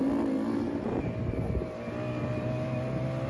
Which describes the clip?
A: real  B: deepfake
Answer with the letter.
A